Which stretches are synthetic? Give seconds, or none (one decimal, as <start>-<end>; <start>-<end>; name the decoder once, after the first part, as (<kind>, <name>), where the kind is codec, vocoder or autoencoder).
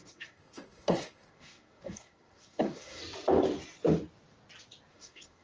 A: 0.0-3.0 (codec, SNAC); 4.9-5.4